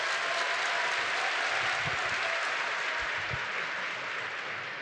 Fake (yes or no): no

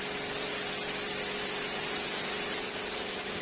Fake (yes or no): no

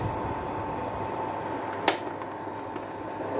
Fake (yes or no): no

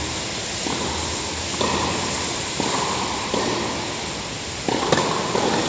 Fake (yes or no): no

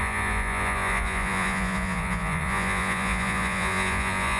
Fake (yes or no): yes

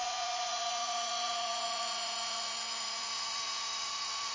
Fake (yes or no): yes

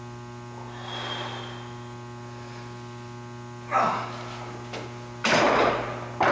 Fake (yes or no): no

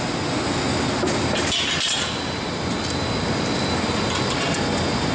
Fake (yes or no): no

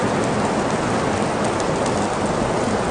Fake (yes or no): no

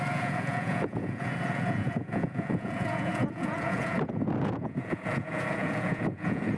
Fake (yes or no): yes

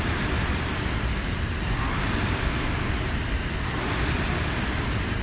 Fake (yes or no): no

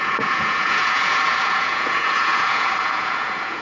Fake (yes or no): yes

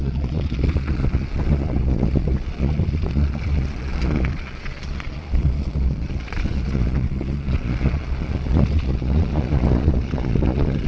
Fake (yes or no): yes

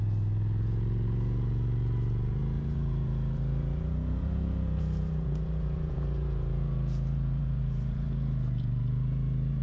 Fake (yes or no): yes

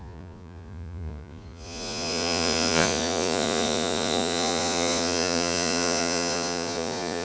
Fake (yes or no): yes